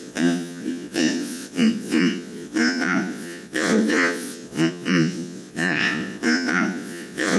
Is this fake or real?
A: fake